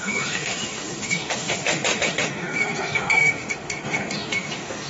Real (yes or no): no